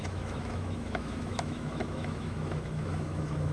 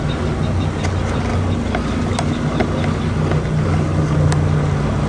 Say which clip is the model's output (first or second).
first